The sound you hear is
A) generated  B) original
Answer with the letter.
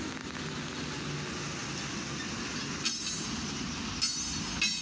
B